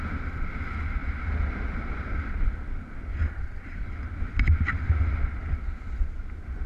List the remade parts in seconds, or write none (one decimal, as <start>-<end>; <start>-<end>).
none